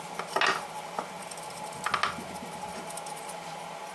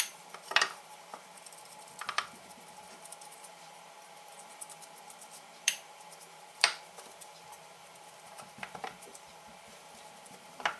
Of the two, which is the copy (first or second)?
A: second